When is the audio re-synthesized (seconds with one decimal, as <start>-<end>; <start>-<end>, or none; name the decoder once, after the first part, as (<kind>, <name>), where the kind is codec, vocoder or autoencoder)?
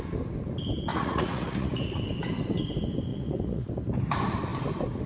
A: 0.9-2.0 (vocoder, Vocos); 3.1-3.7